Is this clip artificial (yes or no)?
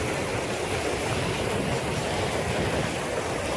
no